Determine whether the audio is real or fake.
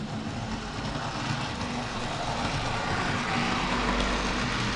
real